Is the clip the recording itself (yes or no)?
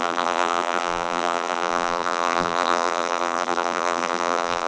no